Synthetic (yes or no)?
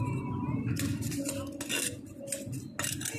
no